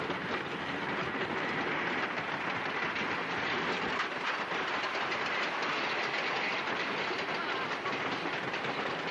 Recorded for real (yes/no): yes